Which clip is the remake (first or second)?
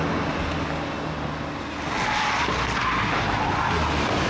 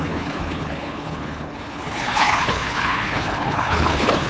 second